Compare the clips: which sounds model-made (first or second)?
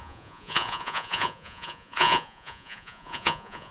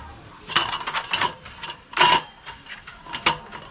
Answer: first